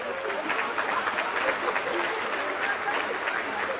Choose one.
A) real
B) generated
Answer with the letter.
A